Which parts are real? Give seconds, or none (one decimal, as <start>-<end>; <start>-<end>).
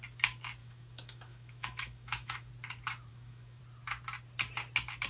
0.0-0.6; 2.5-3.1; 3.6-5.1